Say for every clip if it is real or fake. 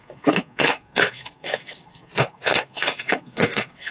fake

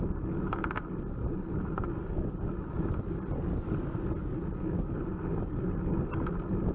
real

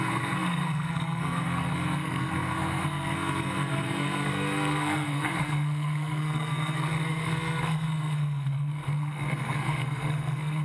fake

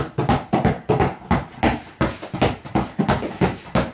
real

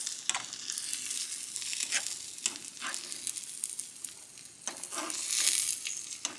real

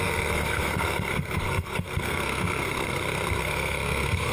fake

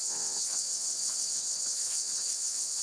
fake